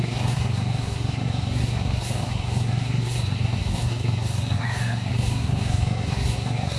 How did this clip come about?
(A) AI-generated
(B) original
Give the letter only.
A